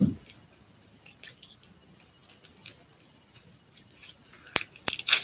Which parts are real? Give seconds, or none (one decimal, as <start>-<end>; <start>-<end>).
0.0-5.2